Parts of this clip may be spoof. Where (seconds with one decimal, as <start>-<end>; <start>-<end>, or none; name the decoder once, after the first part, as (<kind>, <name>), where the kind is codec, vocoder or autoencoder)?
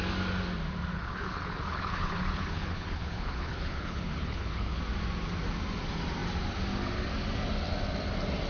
0.9-4.8 (codec, HILCodec)